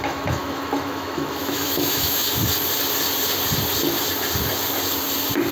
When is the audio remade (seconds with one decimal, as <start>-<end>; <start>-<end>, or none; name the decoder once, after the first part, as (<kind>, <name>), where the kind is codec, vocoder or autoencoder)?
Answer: 0.0-2.4 (autoencoder, DAC-VAE)